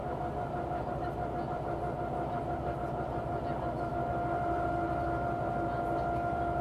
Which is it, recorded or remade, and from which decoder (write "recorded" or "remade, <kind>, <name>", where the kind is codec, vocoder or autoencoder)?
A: recorded